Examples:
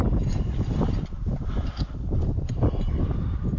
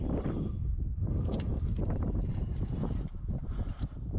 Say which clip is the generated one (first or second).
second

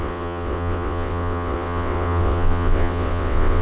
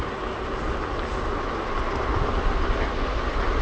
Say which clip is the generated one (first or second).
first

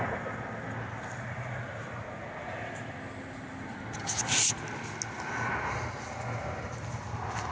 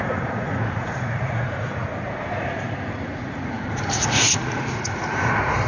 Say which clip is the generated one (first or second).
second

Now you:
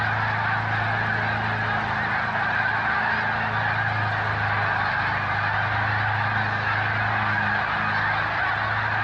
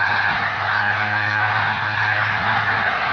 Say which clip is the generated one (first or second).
second